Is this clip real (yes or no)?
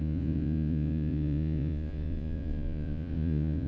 no